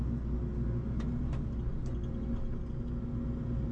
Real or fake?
real